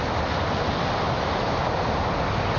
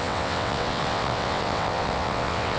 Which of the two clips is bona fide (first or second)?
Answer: first